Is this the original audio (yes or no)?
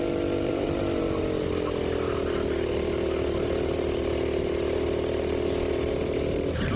yes